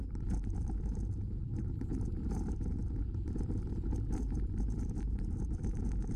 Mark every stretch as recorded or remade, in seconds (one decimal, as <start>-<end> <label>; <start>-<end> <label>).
0.0-6.2 remade